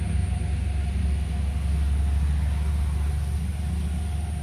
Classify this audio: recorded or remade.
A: recorded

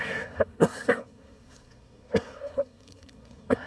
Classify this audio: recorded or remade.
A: remade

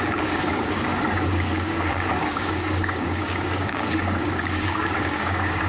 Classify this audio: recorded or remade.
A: remade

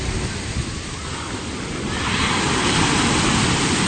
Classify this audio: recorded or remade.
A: recorded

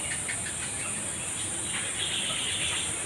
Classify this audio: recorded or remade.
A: recorded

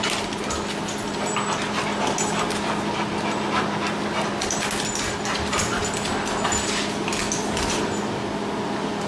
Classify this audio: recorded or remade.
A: recorded